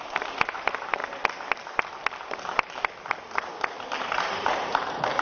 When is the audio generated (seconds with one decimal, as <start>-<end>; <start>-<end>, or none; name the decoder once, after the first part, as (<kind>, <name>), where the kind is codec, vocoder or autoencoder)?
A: 0.0-1.0 (vocoder, BigVGAN v2); 4.1-5.2